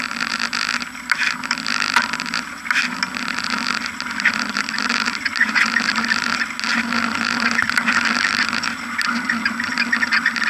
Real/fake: real